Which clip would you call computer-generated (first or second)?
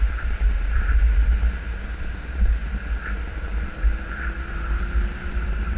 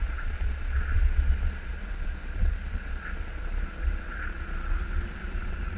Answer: second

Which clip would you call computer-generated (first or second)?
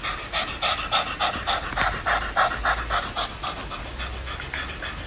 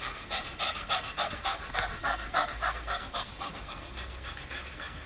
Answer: second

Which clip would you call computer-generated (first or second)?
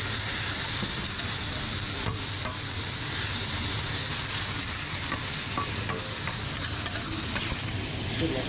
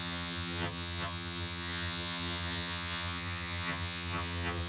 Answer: second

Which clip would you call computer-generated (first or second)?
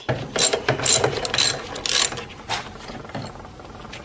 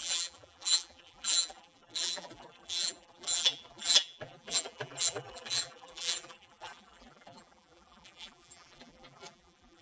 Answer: second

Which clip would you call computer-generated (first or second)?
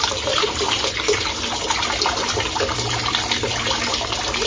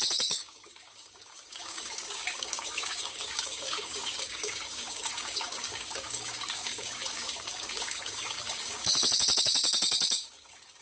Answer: second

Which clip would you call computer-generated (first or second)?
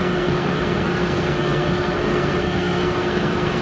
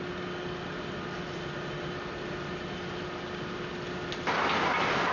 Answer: first